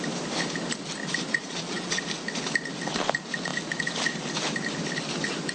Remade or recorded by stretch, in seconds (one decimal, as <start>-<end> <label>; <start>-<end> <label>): 0.0-1.3 recorded; 1.3-2.0 remade; 2.0-5.5 recorded